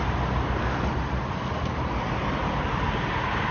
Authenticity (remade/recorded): recorded